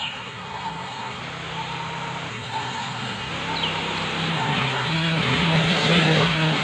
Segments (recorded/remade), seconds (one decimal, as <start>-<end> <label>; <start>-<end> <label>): 0.0-1.2 remade; 1.2-2.3 recorded; 2.3-3.3 remade; 3.3-4.3 recorded; 4.3-6.6 remade

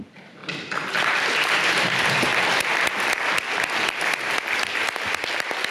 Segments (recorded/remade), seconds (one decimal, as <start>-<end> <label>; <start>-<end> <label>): 0.0-0.4 remade; 0.4-1.4 recorded; 1.4-2.3 remade; 2.3-5.7 recorded

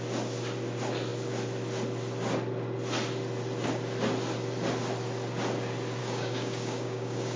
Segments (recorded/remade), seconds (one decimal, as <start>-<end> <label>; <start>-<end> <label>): 0.0-6.0 recorded; 6.0-7.4 remade

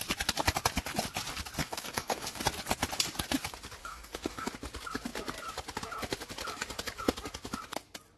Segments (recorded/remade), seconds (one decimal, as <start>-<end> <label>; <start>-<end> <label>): 0.0-1.6 recorded; 1.6-2.4 remade; 2.4-3.8 recorded; 3.8-4.5 remade; 4.5-8.2 recorded

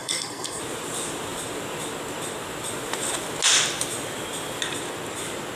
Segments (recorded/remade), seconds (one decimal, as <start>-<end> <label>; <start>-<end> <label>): 0.0-0.6 remade; 0.6-5.6 recorded

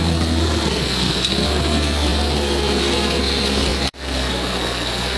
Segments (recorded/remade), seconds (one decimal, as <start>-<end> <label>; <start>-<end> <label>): 0.0-5.2 remade

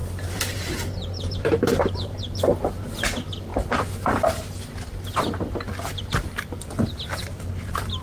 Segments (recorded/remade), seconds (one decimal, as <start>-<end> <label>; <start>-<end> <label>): 0.0-2.2 remade; 2.2-7.2 recorded; 7.2-8.0 remade

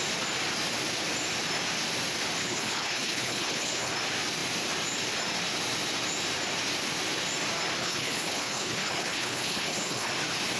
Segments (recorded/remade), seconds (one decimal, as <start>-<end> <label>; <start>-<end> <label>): 0.0-2.4 recorded; 2.4-3.9 remade; 3.9-7.8 recorded; 7.8-10.1 remade; 10.1-10.6 recorded